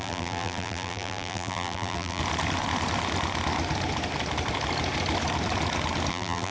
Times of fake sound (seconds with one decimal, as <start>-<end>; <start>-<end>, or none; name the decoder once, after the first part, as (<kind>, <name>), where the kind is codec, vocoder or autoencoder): 0.0-2.2 (vocoder, BigVGAN v2); 6.1-6.5